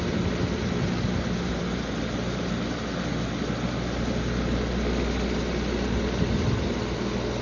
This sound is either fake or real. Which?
real